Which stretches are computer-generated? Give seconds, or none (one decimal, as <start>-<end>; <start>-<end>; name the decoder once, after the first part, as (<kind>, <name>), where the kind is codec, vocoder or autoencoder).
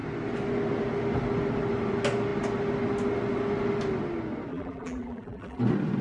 4.5-5.6 (vocoder, BigVGAN v2)